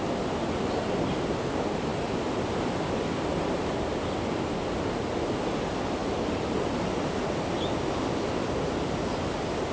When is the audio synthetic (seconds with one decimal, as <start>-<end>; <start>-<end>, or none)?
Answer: none